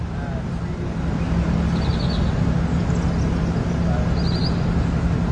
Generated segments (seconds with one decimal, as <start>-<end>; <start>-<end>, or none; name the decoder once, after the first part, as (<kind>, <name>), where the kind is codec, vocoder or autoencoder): none